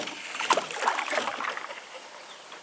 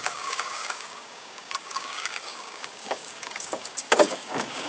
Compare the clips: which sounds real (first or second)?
first